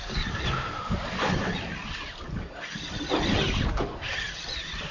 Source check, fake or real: real